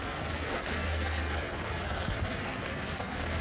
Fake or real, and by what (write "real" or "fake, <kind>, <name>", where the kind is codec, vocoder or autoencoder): fake, codec, SNAC